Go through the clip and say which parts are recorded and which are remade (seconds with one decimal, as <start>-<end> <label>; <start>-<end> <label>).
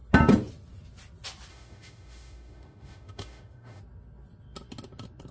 0.0-1.5 recorded; 1.5-3.8 remade; 3.8-5.3 recorded